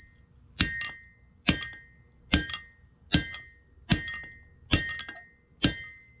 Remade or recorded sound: recorded